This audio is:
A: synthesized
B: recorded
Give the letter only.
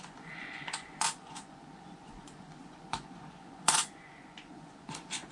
A